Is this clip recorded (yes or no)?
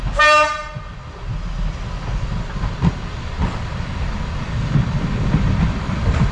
yes